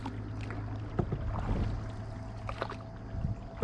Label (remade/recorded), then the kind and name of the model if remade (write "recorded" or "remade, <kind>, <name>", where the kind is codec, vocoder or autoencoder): recorded